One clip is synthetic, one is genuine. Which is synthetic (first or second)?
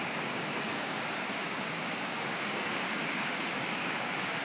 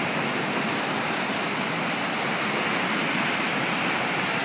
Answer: first